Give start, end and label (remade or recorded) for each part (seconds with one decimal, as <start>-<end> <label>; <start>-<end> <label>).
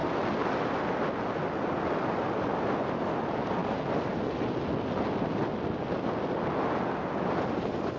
0.0-8.0 recorded